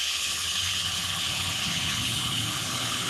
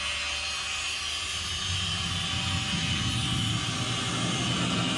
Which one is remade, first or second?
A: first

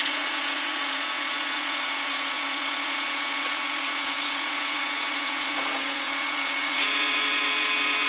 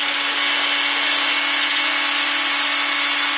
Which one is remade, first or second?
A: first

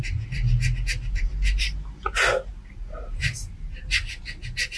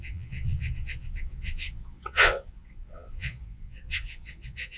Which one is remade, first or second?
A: second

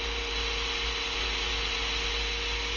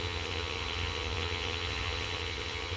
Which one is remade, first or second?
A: second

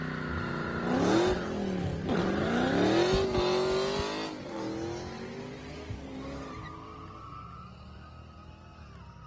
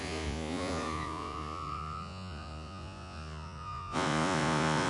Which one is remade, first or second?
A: second